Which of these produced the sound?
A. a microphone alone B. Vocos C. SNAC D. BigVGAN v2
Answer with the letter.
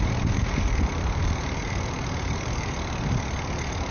D